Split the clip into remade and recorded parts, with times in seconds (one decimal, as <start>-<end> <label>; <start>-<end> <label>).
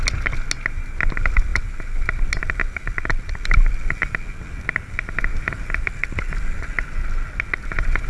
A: 0.0-8.1 recorded